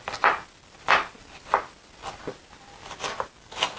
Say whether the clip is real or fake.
real